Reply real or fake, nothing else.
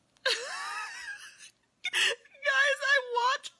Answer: fake